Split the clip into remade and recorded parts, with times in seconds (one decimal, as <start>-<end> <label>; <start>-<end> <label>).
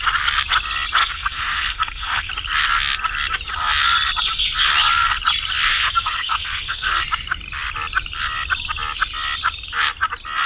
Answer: 0.0-1.0 recorded; 1.0-2.3 remade; 2.3-5.7 recorded; 5.7-6.9 remade; 6.9-10.5 recorded